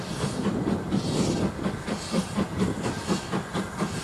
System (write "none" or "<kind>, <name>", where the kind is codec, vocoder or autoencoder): none